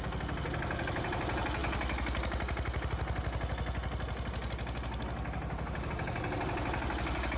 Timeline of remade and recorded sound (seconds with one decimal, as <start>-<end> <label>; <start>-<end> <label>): 0.0-7.4 recorded